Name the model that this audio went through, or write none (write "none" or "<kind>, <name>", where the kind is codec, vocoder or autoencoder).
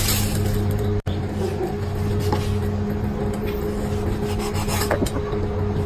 none